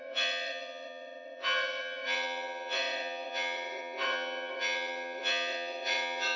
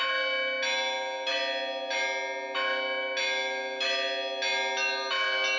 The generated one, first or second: first